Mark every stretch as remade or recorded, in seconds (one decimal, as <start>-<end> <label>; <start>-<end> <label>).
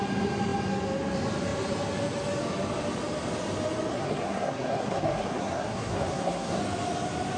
0.0-3.9 recorded; 3.9-6.6 remade; 6.6-7.4 recorded